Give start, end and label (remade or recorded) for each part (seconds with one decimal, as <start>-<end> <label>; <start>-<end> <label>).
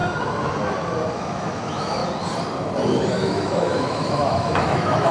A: 0.0-1.2 recorded; 1.2-2.0 remade; 2.0-3.1 recorded; 3.1-5.1 remade